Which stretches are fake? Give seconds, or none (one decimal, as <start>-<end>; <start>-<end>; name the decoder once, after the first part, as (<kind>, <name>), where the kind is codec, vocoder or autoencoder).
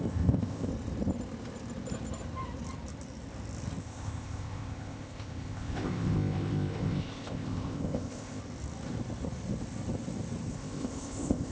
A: 0.0-0.7 (codec, ZipCodec); 3.8-8.4; 10.5-11.5